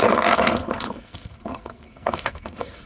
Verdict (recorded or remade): remade